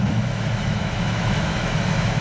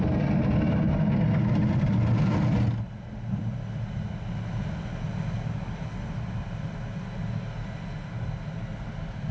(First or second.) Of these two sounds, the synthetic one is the first